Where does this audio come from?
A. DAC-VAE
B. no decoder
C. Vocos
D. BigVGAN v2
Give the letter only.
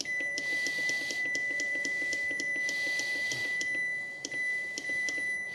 D